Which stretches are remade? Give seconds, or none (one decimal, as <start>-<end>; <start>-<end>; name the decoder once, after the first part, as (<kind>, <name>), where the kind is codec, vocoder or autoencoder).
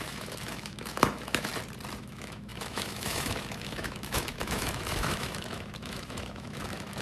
0.0-1.5 (autoencoder, DAC-VAE); 2.0-7.0